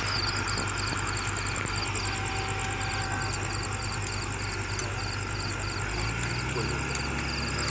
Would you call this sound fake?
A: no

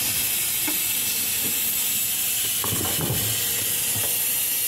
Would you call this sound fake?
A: no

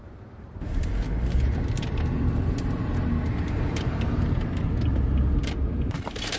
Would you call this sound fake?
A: yes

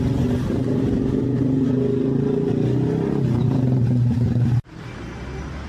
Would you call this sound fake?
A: no